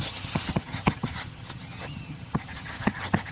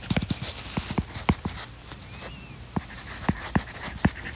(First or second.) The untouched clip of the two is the second